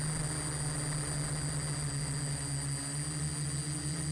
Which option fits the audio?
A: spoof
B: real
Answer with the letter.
B